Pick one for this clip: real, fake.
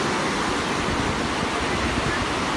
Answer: real